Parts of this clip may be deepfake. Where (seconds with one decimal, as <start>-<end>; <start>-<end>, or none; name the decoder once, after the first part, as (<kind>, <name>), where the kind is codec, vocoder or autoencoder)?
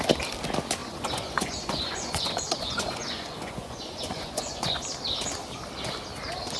0.8-4.8 (vocoder, Vocos)